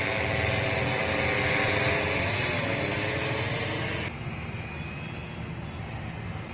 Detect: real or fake real